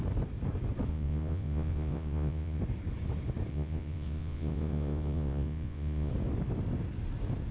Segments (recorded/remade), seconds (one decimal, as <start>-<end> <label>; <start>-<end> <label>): 0.0-0.9 recorded; 0.9-2.6 remade; 2.6-3.5 recorded; 3.5-6.1 remade; 6.1-7.5 recorded

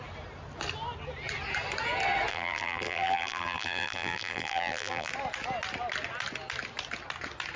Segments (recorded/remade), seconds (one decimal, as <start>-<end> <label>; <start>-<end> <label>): 0.0-2.3 recorded; 2.3-5.1 remade; 5.1-7.6 recorded

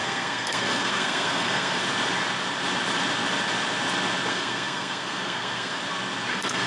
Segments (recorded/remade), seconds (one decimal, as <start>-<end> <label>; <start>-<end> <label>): 0.0-1.8 remade; 1.8-4.3 recorded; 4.3-5.8 remade; 5.8-6.3 recorded; 6.3-6.7 remade

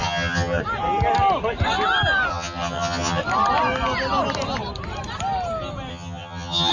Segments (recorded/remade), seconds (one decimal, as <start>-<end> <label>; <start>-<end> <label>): 0.0-0.6 remade; 0.6-2.3 recorded; 2.3-3.2 remade; 3.2-5.9 recorded; 5.9-6.7 remade

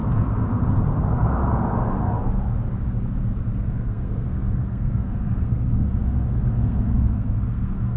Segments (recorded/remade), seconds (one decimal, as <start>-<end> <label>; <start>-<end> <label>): 0.0-3.6 recorded; 3.6-8.0 remade

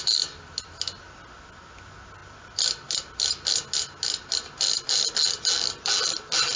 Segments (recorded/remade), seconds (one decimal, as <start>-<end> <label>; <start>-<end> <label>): 0.0-6.6 recorded

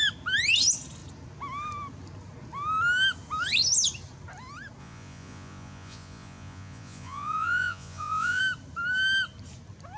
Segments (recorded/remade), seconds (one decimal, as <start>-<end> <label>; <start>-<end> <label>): 0.0-4.8 recorded; 4.8-8.4 remade; 8.4-10.0 recorded

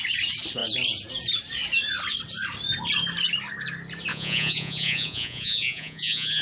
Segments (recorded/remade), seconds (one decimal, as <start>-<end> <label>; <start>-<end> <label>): 0.0-4.1 recorded; 4.1-6.4 remade